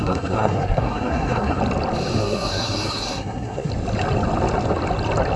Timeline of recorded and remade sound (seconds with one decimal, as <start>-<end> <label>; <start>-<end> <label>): 0.0-1.6 remade; 1.6-2.2 recorded; 2.2-3.7 remade; 3.7-5.4 recorded